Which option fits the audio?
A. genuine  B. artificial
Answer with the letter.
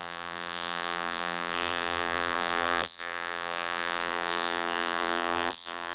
B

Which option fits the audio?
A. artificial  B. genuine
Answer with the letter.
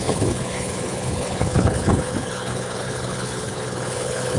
A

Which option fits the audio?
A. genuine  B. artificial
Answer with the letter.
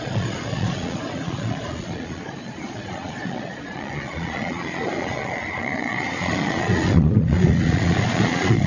B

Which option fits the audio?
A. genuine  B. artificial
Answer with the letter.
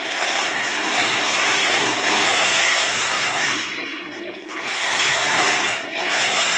B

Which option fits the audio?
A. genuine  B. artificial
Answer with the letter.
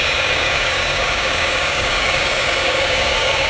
B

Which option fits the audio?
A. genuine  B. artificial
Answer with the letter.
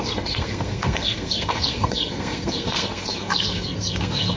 B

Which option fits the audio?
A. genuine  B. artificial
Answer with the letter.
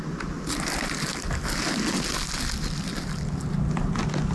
A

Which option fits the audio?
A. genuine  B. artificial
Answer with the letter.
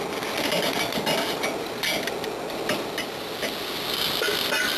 A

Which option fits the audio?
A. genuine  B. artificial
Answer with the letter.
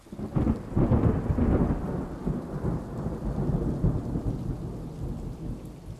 A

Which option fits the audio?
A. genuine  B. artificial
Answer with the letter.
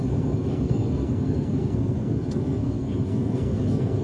B